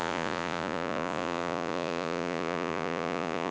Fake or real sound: fake